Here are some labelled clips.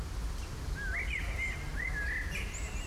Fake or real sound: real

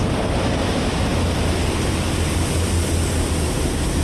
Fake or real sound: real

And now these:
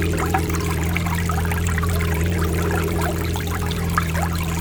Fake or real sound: fake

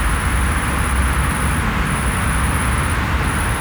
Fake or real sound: real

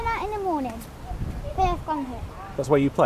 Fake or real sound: real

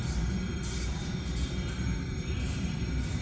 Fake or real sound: fake